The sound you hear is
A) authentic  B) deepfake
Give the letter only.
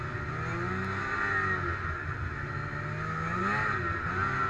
A